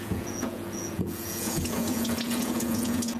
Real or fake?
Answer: fake